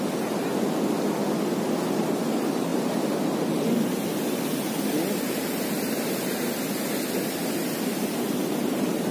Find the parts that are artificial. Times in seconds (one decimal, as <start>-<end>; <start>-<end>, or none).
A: none